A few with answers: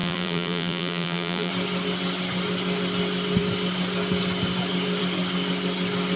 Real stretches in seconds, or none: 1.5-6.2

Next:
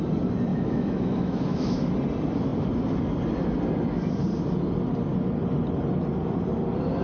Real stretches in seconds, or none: 0.0-0.5; 1.9-7.0

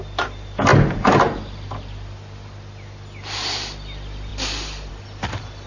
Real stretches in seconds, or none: 0.0-5.7

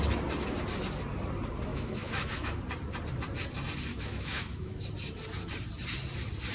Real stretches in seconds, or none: 0.0-1.7; 2.6-3.9; 4.9-6.5